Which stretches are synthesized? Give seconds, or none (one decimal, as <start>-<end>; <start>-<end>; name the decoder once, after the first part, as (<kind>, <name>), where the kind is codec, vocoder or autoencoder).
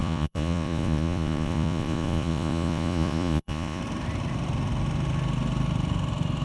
0.0-3.8 (vocoder, Vocos)